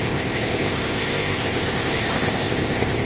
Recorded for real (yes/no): no